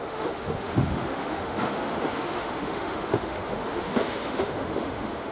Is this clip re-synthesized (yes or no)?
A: yes